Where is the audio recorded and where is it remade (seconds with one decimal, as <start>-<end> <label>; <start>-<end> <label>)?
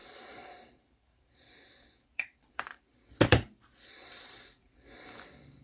0.0-2.8 remade; 2.8-3.3 recorded; 3.3-4.8 remade; 4.8-5.6 recorded